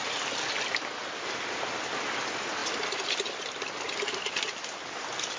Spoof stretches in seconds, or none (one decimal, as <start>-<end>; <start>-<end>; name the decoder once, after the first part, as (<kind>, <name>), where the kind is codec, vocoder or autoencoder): none